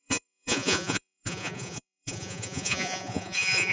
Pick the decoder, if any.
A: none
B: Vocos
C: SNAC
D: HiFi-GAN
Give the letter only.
B